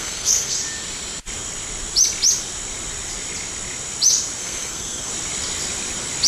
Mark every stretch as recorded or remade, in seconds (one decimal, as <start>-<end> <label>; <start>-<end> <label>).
0.0-0.6 remade; 0.6-4.4 recorded; 4.4-5.1 remade; 5.1-6.3 recorded